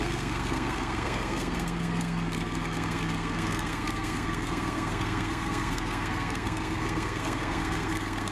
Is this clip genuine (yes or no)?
no